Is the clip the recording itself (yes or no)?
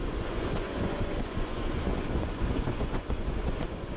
no